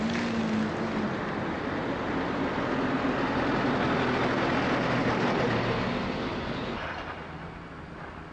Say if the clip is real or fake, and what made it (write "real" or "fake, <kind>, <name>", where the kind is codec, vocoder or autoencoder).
real